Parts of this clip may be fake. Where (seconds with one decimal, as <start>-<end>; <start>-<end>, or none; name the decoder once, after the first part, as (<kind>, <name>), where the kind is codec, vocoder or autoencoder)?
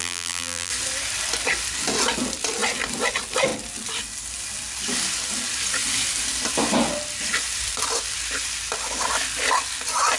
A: 0.0-0.7 (vocoder, BigVGAN v2)